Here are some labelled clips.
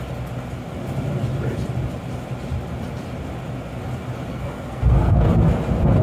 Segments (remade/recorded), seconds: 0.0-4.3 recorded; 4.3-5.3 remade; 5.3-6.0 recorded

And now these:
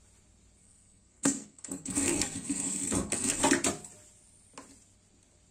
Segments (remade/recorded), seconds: 0.0-0.6 recorded; 0.6-3.4 remade; 3.4-5.5 recorded